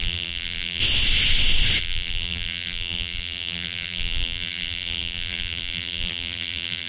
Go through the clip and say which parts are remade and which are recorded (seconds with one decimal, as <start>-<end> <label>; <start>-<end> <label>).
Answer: 0.0-0.8 remade; 0.8-1.8 recorded; 1.8-6.9 remade